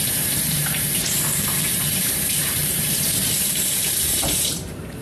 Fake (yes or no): yes